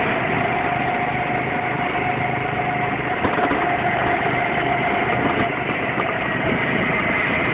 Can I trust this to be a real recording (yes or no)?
yes